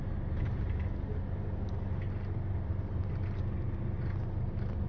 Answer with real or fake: real